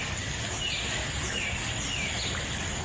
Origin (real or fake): real